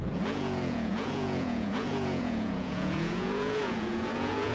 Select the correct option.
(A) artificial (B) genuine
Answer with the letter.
A